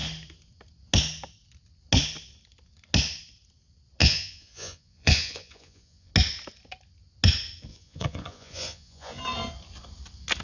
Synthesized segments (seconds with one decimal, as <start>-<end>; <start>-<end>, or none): 4.0-6.1; 7.7-9.2

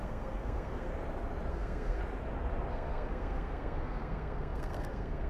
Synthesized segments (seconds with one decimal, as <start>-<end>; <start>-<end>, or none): 0.0-0.9; 1.5-2.0; 2.7-5.3